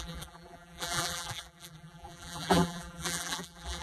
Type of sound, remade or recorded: remade